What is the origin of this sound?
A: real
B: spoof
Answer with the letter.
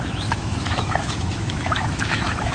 B